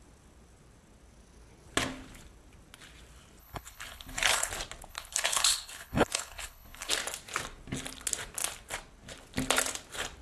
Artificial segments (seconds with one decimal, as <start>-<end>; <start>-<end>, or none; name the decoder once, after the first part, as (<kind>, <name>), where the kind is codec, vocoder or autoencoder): 3.4-4.5 (codec, HILCodec); 4.9-6.9